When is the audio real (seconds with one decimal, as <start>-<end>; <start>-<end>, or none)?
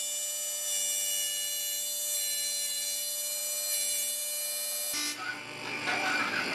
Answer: 0.0-6.5